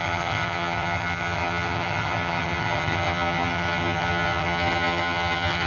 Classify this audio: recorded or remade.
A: remade